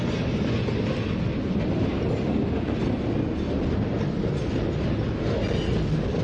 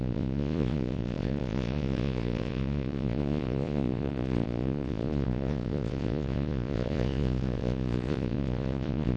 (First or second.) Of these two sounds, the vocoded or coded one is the second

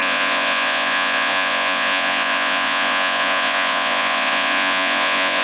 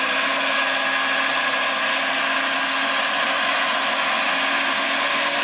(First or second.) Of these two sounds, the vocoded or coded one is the first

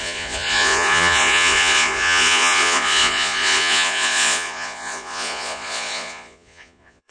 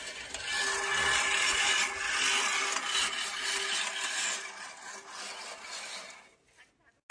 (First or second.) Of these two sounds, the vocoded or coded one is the first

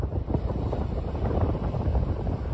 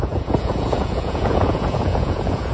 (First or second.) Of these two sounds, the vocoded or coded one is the second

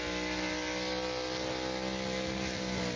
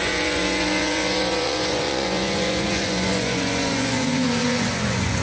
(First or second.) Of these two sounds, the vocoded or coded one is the second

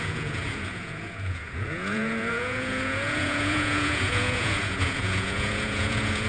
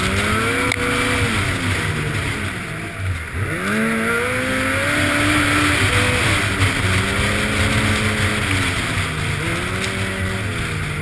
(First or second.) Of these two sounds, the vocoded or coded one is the first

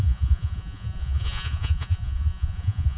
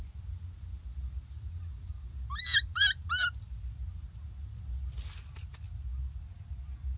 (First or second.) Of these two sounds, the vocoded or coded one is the first